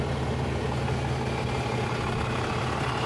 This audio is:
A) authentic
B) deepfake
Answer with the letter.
A